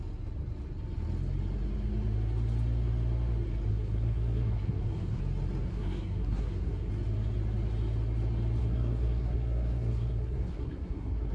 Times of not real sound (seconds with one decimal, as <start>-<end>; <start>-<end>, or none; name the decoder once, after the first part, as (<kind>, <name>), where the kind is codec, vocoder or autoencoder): 3.7-5.2 (codec, SNAC); 5.7-6.9; 8.6-11.3